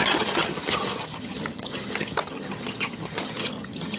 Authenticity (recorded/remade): remade